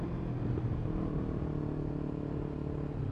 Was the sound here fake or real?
real